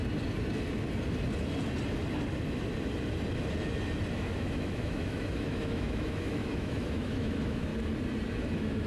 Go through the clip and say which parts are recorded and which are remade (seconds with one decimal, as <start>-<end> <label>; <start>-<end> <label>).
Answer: 0.0-4.1 recorded; 4.1-7.7 remade; 7.7-8.3 recorded; 8.3-8.9 remade